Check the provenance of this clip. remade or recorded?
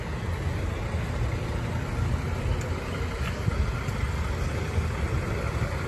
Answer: recorded